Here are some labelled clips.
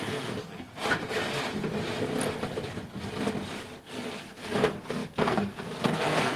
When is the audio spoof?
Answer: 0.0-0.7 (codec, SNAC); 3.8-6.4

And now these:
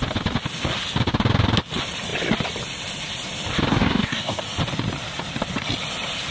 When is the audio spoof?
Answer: 3.7-4.4 (codec, SNAC)

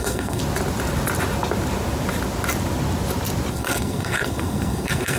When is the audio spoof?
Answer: 0.0-0.4 (codec, SNAC); 3.5-5.2

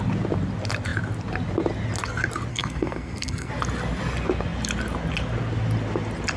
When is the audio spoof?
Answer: 2.5-3.5 (codec, SNAC)

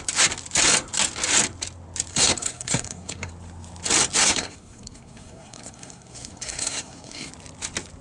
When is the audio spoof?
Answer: 2.1-3.3 (codec, SNAC); 4.2-7.3

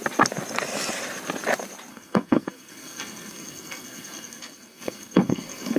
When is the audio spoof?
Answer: 1.9-5.8 (codec, SNAC)

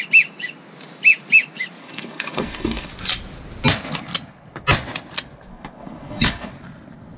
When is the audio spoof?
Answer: 1.8-2.9 (codec, SNAC); 5.5-6.5

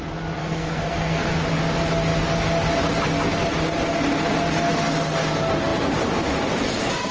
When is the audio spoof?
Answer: 0.4-1.3 (codec, SNAC)